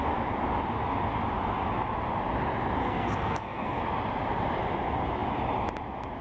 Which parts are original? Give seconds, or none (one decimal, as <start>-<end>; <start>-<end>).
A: 0.0-2.8; 3.8-6.2